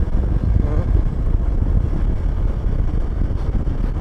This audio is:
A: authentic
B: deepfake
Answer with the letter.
A